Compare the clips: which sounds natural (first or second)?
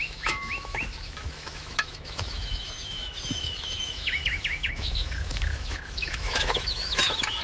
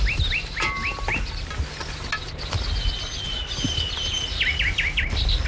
second